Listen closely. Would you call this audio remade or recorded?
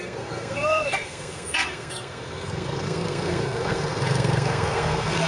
remade